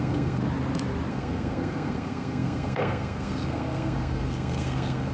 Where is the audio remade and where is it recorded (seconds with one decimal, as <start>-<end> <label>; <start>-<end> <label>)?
0.0-0.4 remade; 0.4-1.1 recorded; 1.1-5.1 remade